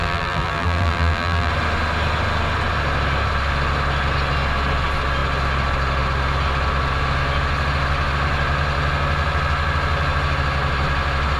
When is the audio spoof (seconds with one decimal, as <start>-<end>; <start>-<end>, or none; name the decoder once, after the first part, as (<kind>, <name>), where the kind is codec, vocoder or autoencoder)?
0.0-1.5 (vocoder, BigVGAN v2)